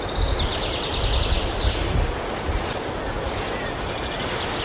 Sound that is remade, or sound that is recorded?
recorded